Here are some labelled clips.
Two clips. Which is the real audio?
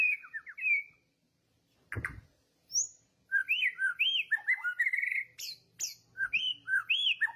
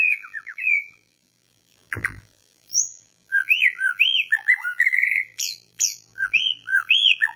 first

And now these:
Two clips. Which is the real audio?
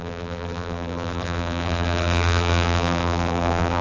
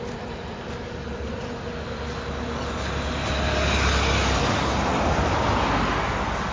second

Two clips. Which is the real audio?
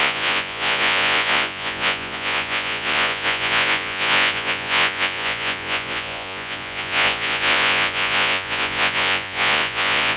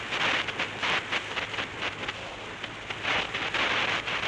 second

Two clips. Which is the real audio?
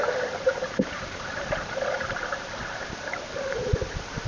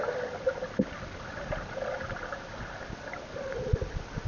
second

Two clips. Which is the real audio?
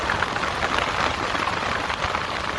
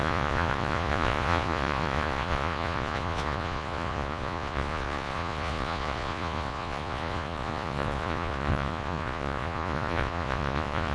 first